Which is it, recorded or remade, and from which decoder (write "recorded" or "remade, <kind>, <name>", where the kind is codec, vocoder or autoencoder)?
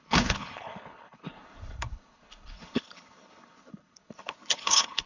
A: remade, codec, HILCodec